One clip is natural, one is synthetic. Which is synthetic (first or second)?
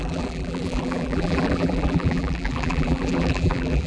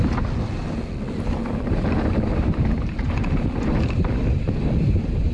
first